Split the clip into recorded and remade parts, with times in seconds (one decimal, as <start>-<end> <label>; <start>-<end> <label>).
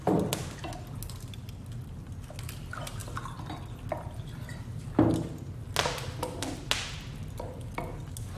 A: 0.0-8.4 recorded